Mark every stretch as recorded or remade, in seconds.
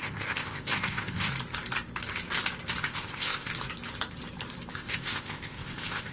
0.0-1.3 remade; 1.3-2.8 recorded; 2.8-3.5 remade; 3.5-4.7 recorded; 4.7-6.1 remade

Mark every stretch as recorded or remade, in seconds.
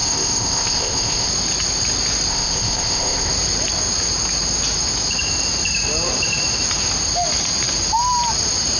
0.0-1.3 remade; 1.3-2.3 recorded; 2.3-3.3 remade; 3.3-8.8 recorded